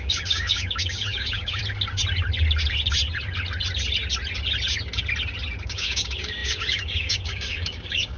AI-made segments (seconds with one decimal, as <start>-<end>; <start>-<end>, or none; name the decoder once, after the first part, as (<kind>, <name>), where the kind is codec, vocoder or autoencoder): 0.0-1.6 (codec, DAC); 5.6-8.2